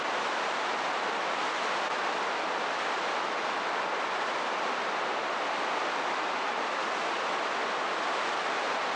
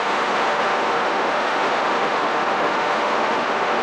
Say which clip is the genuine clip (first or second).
first